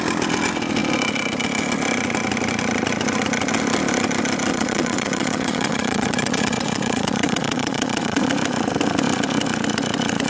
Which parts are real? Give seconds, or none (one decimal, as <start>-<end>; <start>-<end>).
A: 0.0-4.5; 8.3-10.3